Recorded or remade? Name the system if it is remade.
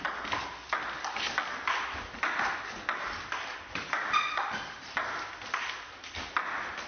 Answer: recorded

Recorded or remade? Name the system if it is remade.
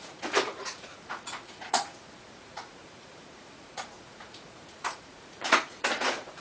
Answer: remade, vocoder, Vocos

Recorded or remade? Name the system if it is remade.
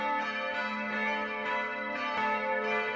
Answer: recorded